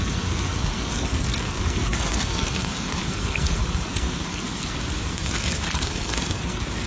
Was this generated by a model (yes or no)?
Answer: yes